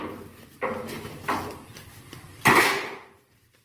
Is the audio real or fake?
real